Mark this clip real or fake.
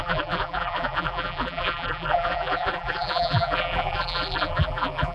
fake